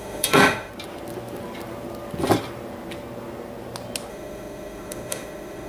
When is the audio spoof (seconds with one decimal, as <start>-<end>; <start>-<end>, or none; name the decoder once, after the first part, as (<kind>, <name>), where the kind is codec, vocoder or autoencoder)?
0.0-0.7 (autoencoder, DAC-VAE); 4.1-5.7

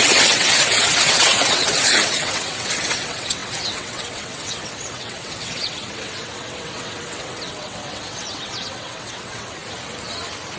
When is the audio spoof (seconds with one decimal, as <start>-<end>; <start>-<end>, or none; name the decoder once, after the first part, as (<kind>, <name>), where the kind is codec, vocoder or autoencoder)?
0.0-9.6 (vocoder, WaveNeXt)